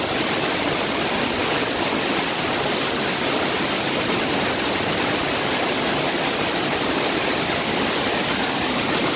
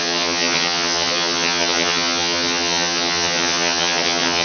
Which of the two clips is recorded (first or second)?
first